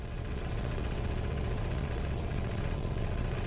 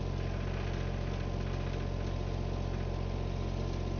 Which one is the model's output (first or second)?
first